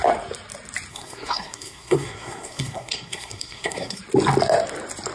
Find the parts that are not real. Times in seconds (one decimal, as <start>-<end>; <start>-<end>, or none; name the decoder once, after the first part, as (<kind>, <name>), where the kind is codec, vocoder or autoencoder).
0.9-4.0 (codec, SNAC)